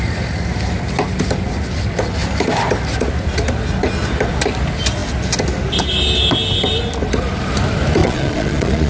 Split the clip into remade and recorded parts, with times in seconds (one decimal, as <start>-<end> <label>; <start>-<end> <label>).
0.0-8.0 recorded; 8.0-8.9 remade